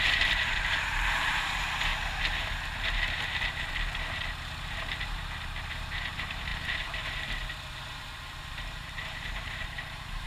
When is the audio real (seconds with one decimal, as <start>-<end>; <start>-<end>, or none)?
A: 1.9-6.1; 6.5-8.4

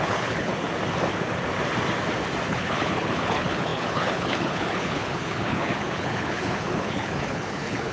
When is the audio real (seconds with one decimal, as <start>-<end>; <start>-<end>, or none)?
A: 0.5-2.5

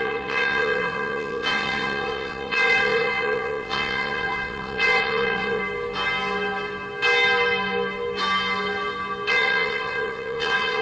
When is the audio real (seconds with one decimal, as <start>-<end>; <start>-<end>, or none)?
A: 5.6-9.3

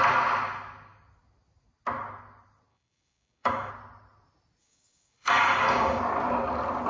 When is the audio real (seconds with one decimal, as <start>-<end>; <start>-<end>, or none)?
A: 0.0-2.7; 3.7-4.6; 6.0-6.9